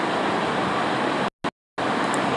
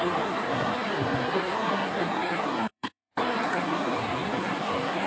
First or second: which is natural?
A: first